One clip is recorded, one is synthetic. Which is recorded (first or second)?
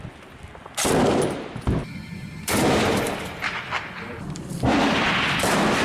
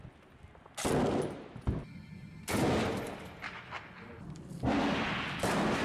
second